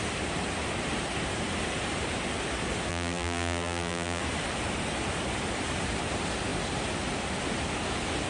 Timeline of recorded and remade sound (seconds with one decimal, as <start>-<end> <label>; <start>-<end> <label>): 0.0-2.9 recorded; 2.9-4.2 remade; 4.2-8.3 recorded